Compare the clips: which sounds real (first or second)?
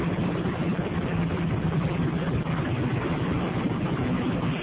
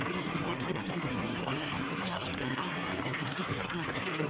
first